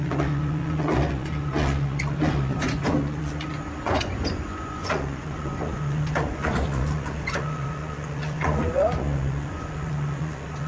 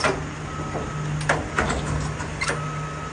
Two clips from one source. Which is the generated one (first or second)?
first